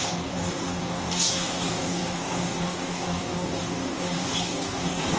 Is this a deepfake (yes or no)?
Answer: yes